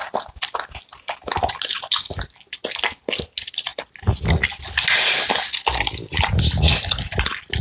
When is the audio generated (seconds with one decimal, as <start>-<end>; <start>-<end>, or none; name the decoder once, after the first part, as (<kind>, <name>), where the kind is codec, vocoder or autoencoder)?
none